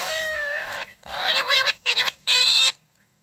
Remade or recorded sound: remade